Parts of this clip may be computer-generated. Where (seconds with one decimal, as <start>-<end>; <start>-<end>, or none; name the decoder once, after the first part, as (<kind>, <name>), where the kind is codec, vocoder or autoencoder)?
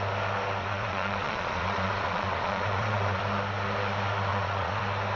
0.6-3.2 (vocoder, Vocos); 4.3-4.8